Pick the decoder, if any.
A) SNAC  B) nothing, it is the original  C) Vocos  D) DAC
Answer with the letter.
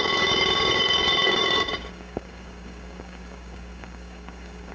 D